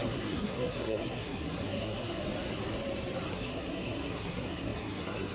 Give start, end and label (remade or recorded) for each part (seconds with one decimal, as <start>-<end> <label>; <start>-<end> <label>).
0.0-2.2 remade; 2.2-3.3 recorded; 3.3-5.3 remade